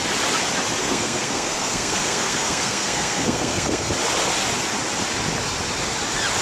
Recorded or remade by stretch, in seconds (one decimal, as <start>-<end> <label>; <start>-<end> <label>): 0.0-0.8 recorded; 0.8-3.9 remade; 3.9-6.4 recorded